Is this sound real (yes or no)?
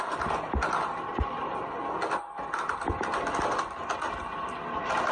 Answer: yes